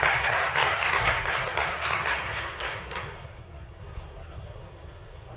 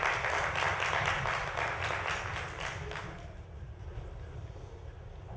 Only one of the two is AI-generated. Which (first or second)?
first